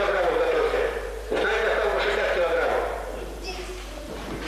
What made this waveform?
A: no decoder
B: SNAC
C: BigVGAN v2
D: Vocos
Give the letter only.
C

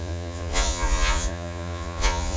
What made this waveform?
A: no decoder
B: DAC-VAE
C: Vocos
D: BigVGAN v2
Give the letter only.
C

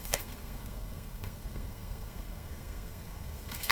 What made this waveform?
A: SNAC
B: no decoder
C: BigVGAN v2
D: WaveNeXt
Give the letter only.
A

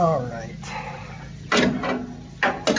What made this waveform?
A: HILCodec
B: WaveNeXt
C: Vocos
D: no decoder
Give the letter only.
D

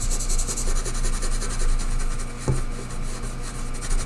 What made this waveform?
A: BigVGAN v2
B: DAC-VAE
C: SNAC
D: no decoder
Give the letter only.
D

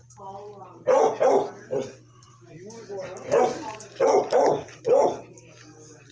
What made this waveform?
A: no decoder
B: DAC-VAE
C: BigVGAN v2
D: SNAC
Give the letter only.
C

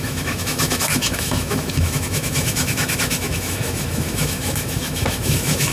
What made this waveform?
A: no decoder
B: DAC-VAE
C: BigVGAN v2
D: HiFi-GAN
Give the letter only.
B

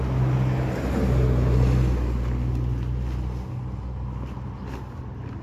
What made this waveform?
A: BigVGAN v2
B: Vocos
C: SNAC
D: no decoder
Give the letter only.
D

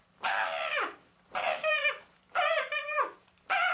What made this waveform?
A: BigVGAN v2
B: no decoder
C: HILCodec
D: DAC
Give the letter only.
A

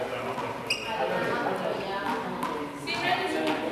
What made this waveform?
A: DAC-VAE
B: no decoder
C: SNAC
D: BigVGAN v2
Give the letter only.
B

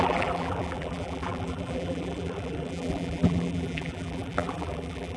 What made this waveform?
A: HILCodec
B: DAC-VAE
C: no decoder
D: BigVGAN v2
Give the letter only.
D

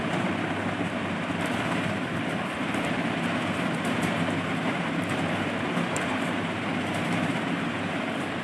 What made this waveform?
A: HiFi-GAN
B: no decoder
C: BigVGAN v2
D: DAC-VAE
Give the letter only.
C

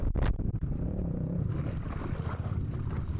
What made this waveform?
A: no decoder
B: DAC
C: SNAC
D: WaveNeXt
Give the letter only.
A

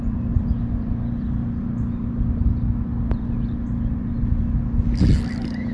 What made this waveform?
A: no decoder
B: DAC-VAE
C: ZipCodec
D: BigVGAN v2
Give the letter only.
A